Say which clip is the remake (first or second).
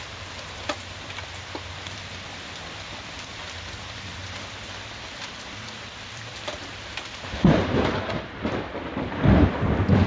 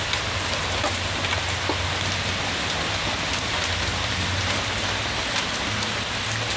first